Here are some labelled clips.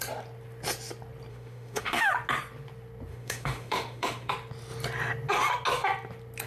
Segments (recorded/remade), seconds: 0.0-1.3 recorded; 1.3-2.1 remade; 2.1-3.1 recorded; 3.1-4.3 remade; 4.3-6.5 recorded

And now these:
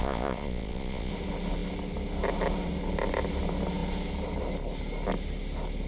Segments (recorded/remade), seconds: 0.0-1.1 remade; 1.1-5.9 recorded

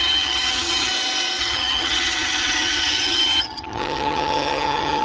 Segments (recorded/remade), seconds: 0.0-0.9 remade; 0.9-1.4 recorded; 1.4-5.0 remade

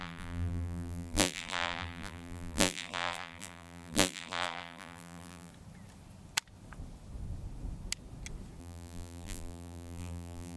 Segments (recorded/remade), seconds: 0.0-5.5 remade; 5.5-8.6 recorded; 8.6-10.6 remade

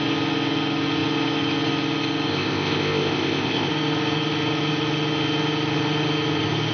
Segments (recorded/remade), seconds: 0.0-2.3 recorded; 2.3-3.7 remade; 3.7-6.7 recorded